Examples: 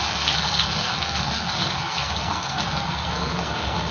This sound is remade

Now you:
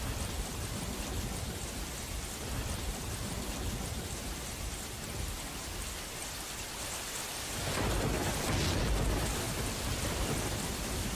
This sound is recorded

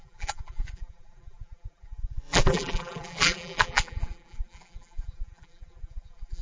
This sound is remade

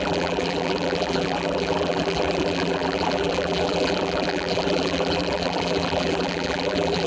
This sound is remade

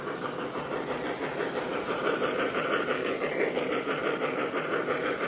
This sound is remade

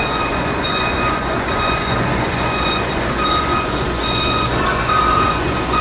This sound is remade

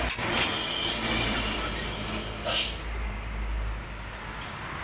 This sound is recorded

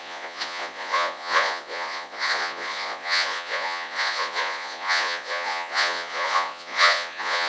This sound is remade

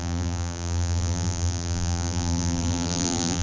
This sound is remade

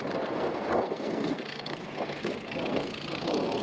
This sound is remade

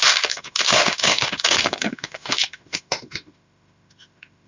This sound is remade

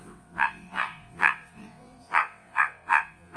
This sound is remade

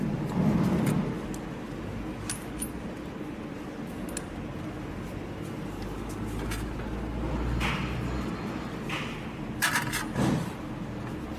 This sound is recorded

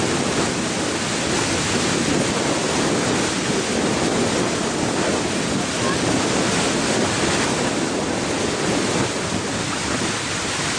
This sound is recorded